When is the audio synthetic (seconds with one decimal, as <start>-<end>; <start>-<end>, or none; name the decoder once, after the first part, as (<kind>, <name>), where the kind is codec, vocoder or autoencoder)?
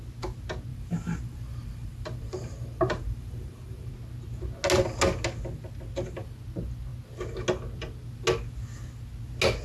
0.7-3.9 (vocoder, BigVGAN v2)